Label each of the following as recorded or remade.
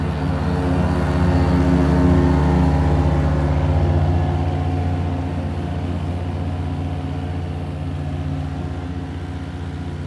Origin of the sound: recorded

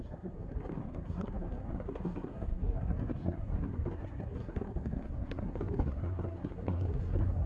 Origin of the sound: remade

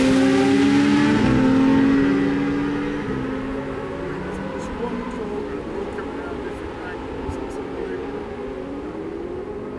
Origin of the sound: recorded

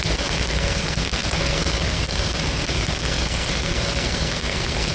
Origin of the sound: remade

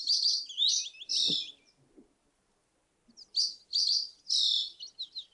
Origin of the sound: recorded